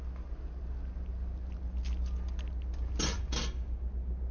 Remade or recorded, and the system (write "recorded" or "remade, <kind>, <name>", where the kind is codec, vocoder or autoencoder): recorded